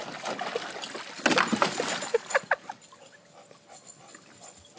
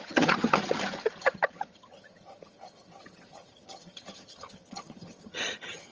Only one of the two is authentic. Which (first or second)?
first